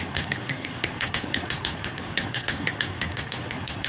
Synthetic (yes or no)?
yes